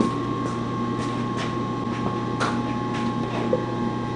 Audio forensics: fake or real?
real